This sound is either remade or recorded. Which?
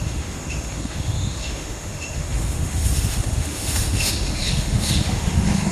remade